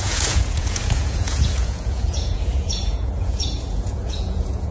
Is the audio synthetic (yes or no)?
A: yes